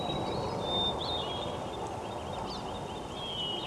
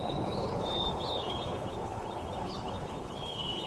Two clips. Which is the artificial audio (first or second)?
second